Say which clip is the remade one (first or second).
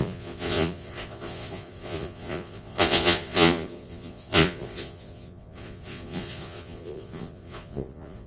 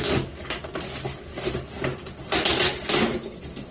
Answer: first